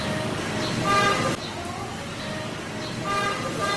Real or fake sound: real